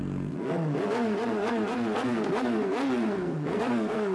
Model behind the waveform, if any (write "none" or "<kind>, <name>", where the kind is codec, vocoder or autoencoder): codec, SNAC